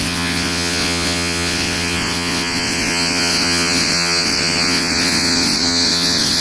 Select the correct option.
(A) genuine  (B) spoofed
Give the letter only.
B